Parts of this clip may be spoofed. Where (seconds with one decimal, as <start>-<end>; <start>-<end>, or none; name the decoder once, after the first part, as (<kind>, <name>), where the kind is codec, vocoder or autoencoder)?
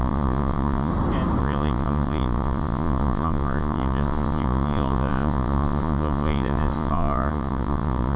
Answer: 0.0-0.9 (vocoder, Vocos); 1.4-8.2